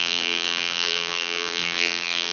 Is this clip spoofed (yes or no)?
yes